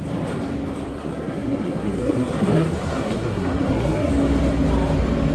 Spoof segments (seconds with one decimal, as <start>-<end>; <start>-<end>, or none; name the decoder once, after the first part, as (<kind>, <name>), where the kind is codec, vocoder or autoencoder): 0.9-4.1 (codec, SNAC)